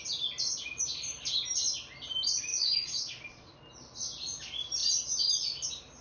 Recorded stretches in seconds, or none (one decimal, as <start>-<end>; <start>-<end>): 0.0-2.5; 3.6-6.0